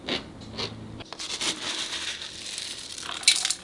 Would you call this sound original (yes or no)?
yes